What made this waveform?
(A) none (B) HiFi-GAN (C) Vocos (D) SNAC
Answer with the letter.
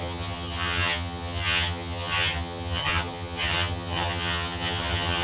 B